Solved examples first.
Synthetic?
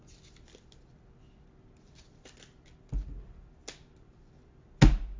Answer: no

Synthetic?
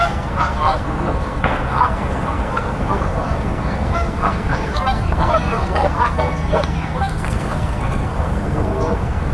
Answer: yes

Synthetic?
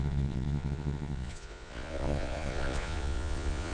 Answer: yes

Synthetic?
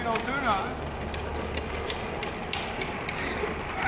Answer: no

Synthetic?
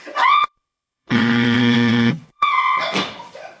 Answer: yes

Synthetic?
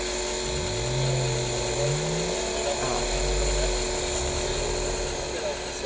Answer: no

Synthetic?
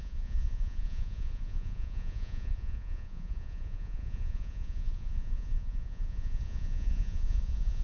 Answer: yes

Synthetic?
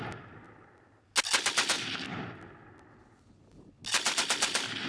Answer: no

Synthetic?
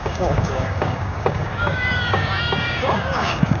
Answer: yes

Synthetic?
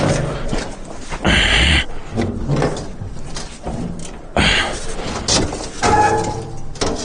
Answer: no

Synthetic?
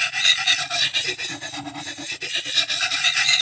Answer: no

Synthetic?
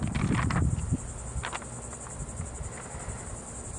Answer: no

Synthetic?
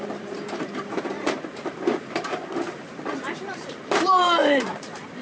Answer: yes